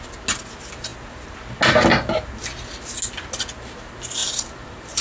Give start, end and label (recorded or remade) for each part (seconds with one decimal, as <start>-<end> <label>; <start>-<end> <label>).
0.0-4.2 recorded; 4.2-5.0 remade